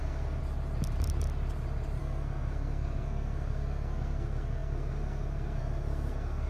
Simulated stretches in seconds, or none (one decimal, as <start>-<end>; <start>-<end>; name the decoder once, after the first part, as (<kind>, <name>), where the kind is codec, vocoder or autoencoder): 0.0-0.4 (codec, SNAC); 2.0-6.5